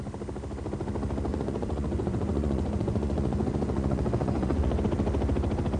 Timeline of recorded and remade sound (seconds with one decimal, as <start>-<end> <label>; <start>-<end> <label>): 0.0-1.3 recorded; 1.3-4.8 remade; 4.8-5.8 recorded